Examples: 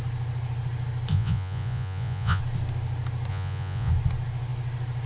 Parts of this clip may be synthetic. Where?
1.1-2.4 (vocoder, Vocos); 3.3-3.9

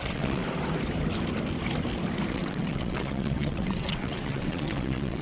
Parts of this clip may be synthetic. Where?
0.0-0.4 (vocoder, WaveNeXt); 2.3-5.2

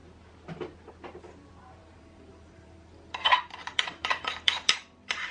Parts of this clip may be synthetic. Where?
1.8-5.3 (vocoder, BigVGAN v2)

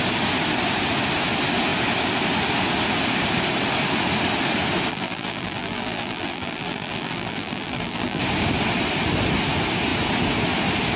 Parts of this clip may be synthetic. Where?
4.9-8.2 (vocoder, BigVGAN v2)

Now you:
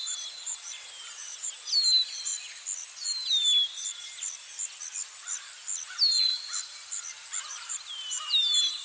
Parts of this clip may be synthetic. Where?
0.0-2.3 (vocoder, BigVGAN v2); 7.4-8.8